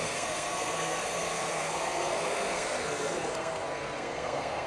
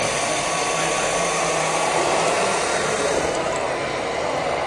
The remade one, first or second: first